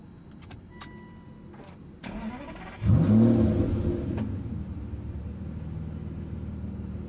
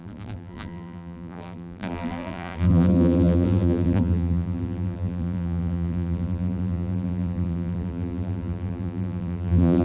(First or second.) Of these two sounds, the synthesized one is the second